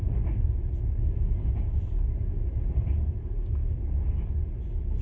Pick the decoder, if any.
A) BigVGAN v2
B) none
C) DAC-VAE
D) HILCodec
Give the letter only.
B